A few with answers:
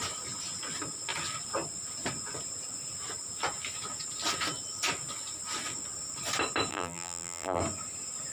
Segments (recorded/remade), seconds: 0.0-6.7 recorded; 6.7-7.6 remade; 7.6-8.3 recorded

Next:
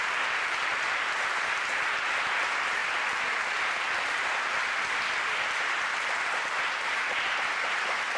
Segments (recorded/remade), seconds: 0.0-2.8 recorded; 2.8-5.8 remade; 5.8-8.2 recorded

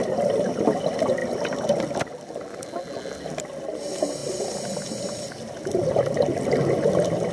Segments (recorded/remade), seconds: 0.0-7.3 recorded

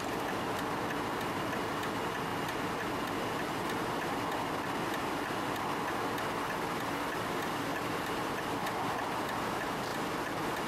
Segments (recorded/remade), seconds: 0.0-7.7 recorded; 7.7-8.4 remade; 8.4-10.7 recorded

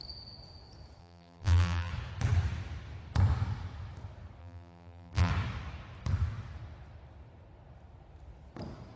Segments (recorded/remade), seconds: 0.0-1.0 recorded; 1.0-1.9 remade; 1.9-4.4 recorded; 4.4-5.3 remade; 5.3-9.0 recorded

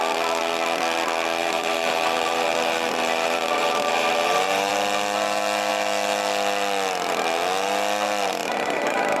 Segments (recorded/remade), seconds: 0.0-1.4 recorded; 1.4-4.7 remade; 4.7-8.4 recorded; 8.4-9.2 remade

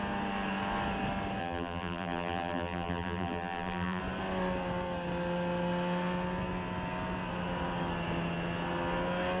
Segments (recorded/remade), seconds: 0.0-1.4 recorded; 1.4-4.0 remade; 4.0-9.4 recorded

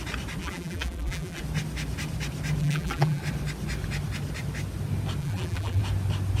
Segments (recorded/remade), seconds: 0.0-0.4 recorded; 0.4-1.4 remade; 1.4-2.6 recorded; 2.6-3.2 remade; 3.2-5.2 recorded; 5.2-5.8 remade; 5.8-6.4 recorded